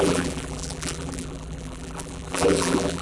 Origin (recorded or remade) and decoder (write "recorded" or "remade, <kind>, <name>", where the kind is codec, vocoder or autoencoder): remade, vocoder, BigVGAN v2